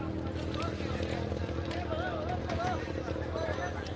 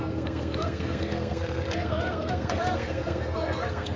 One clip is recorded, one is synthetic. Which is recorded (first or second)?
first